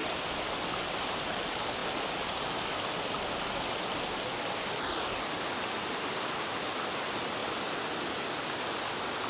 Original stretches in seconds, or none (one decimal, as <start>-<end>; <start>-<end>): 0.0-9.3